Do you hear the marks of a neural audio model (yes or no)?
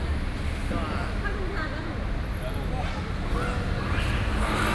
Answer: no